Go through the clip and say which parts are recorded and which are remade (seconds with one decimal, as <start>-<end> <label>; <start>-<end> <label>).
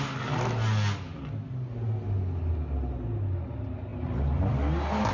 0.0-5.1 recorded